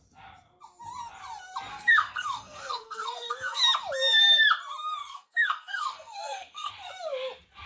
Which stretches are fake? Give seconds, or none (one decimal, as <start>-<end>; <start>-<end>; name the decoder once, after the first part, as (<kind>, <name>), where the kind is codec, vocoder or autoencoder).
1.7-3.6 (codec, SNAC); 5.0-6.7